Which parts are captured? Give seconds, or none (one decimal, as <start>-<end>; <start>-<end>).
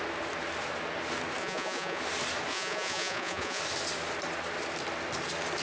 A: 0.0-1.4; 2.0-2.5; 3.6-5.6